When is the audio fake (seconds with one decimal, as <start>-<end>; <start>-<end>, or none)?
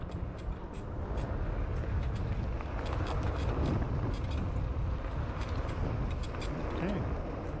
none